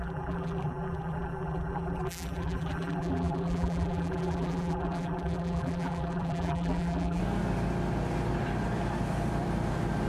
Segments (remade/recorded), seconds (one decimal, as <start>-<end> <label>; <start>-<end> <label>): 0.0-7.2 remade; 7.2-10.1 recorded